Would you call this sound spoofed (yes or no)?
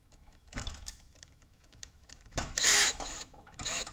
yes